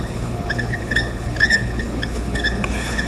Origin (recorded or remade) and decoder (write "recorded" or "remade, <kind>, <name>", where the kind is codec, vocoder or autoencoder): remade, codec, HILCodec